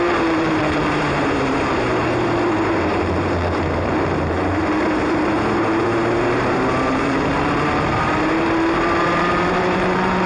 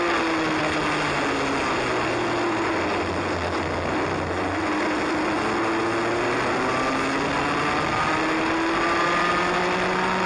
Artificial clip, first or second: first